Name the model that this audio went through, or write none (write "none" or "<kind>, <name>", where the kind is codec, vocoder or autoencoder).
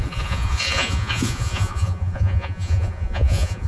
vocoder, Vocos